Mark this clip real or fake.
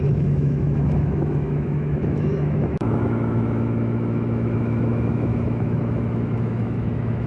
fake